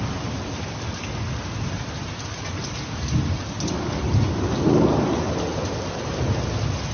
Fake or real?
real